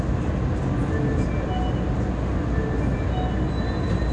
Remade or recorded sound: recorded